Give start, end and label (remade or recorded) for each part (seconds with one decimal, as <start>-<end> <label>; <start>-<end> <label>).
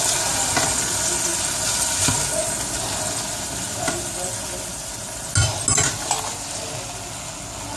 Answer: 0.0-7.8 recorded